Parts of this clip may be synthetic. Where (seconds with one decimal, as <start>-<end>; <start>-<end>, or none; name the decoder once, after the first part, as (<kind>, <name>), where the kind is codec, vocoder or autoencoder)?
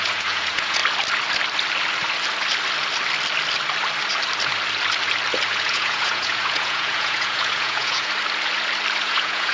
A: 0.0-0.8 (vocoder, Vocos); 5.5-8.1; 9.0-9.5